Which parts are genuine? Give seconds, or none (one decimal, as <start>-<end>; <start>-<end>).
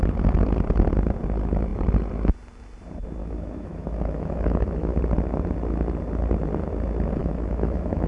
0.0-3.2; 5.0-7.2